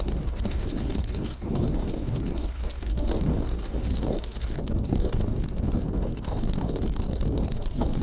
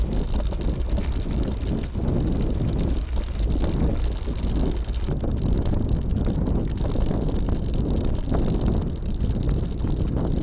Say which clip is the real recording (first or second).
second